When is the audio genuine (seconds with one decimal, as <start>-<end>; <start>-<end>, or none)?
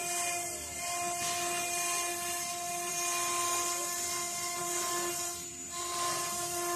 0.0-6.8